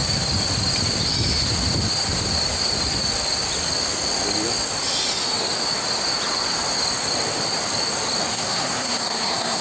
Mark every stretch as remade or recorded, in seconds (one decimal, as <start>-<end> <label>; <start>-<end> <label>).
0.0-8.3 recorded; 8.3-9.6 remade